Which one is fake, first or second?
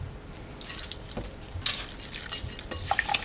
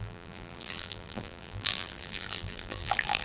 second